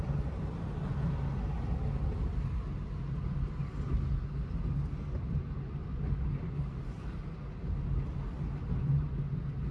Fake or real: real